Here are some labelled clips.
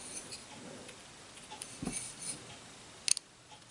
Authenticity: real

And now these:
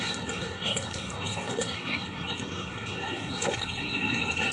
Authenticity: fake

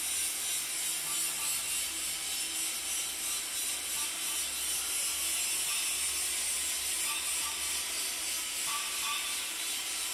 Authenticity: real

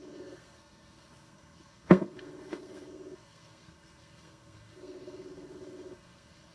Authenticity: fake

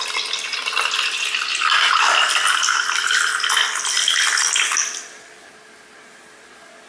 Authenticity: real